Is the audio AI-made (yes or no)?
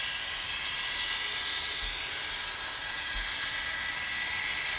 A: no